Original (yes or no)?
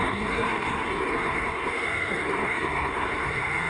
no